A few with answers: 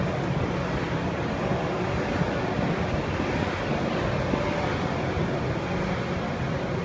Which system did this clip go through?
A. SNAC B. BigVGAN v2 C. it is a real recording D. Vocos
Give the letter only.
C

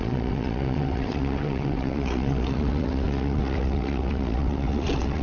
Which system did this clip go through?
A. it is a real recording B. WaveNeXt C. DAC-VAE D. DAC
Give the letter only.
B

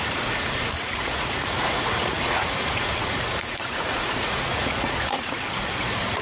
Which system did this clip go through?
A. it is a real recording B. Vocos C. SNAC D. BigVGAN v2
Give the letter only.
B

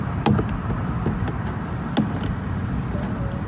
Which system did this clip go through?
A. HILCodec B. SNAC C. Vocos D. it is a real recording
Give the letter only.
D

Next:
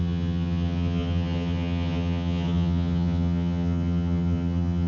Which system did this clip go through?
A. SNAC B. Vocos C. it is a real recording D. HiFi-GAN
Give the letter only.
D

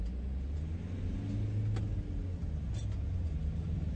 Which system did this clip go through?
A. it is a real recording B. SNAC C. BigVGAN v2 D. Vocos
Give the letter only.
A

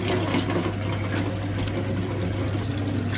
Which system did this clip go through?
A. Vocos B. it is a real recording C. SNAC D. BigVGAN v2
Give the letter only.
B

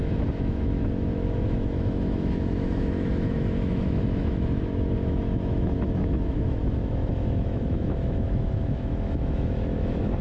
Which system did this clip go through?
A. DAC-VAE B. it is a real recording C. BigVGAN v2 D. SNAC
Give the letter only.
A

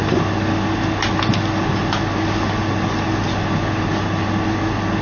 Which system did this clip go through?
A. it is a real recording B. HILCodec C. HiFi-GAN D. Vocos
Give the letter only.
A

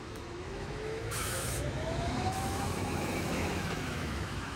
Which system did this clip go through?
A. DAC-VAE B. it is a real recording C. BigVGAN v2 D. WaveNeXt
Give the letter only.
A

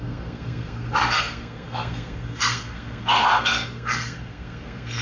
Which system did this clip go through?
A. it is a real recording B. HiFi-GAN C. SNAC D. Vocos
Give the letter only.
C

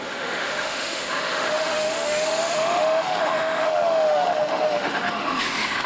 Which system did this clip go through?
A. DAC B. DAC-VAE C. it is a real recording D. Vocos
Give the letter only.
B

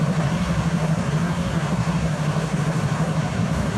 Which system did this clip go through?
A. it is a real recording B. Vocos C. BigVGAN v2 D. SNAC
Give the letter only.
D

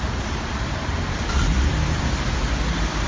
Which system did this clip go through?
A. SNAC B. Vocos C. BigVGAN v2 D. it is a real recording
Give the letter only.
C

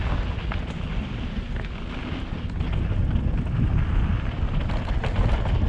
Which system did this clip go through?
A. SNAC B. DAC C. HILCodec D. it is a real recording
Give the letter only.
D